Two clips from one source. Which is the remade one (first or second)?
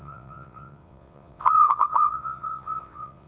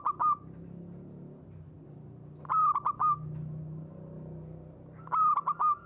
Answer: first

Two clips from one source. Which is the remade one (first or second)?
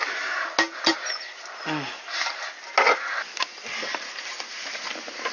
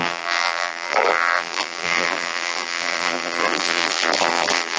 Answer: second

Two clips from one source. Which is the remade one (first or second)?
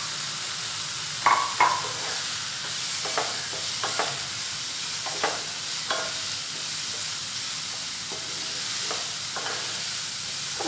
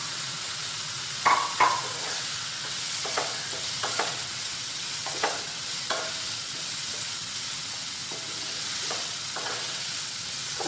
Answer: second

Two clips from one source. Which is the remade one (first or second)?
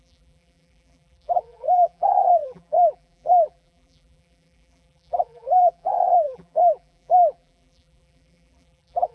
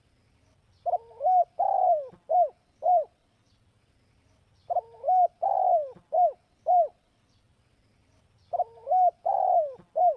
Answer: first